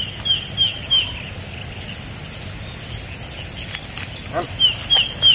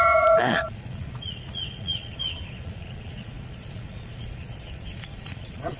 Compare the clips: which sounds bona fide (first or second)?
first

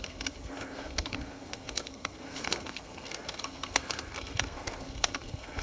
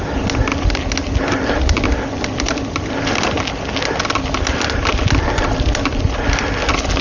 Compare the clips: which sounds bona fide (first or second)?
second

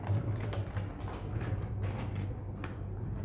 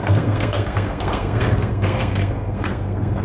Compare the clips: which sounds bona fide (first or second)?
first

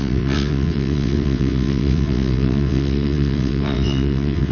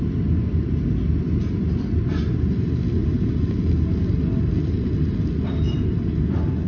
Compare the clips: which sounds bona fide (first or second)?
second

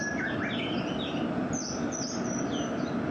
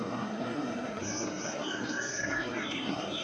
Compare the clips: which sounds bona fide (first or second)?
first